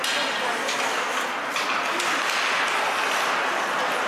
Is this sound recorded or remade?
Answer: recorded